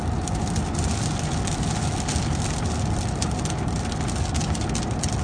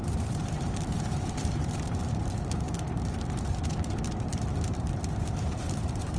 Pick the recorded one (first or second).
first